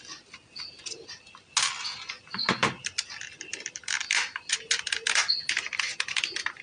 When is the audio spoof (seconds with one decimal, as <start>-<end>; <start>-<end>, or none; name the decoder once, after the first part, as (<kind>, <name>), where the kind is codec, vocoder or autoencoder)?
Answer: none